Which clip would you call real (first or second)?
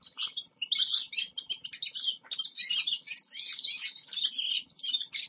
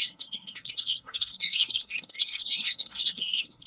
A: first